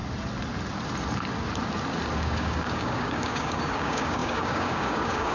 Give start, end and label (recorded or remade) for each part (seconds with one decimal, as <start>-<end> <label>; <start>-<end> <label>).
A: 0.0-2.2 recorded; 2.2-5.3 remade